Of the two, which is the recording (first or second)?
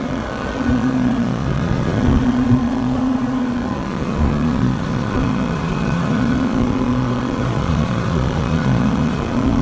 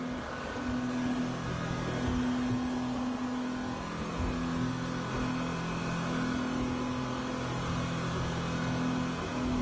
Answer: second